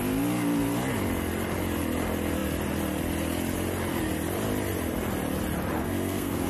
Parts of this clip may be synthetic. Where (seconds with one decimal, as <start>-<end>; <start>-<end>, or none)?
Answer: 5.8-6.5